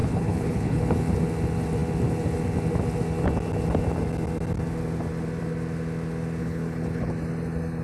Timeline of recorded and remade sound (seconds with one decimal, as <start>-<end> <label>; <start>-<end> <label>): 0.0-0.8 remade; 0.8-6.4 recorded; 6.4-7.1 remade; 7.1-7.8 recorded